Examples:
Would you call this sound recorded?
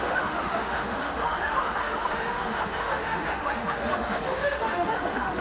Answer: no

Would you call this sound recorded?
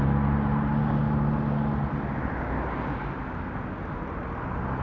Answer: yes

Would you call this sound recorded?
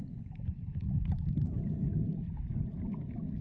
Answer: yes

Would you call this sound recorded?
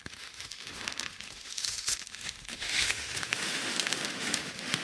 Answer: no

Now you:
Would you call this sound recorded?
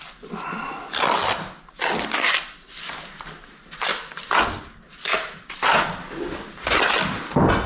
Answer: yes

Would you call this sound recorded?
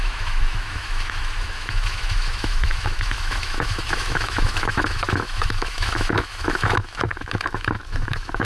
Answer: no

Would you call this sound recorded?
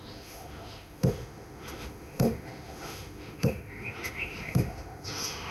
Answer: no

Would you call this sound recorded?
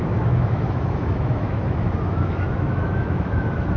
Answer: no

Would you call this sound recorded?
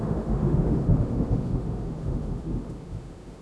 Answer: no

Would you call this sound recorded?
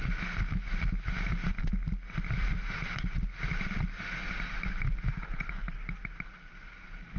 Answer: yes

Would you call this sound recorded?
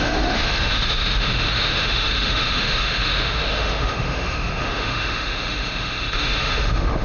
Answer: no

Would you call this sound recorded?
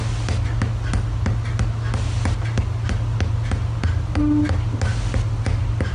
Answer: yes